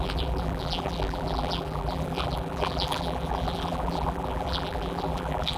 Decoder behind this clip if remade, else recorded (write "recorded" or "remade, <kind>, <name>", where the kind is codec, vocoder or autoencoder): remade, vocoder, BigVGAN v2